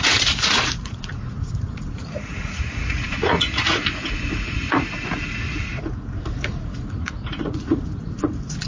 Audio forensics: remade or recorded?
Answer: remade